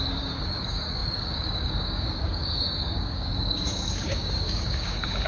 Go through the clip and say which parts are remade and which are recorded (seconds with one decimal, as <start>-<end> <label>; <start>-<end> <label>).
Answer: 0.0-5.3 remade